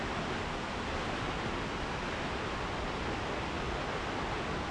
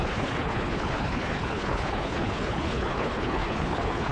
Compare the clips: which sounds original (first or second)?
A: first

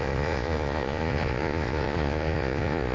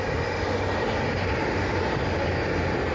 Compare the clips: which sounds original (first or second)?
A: second